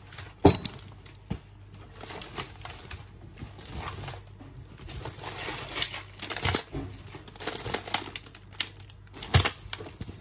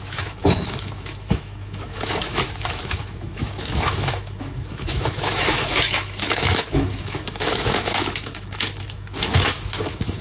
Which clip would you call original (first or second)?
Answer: first